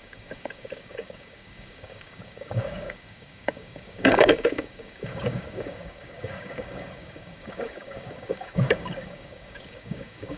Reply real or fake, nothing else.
fake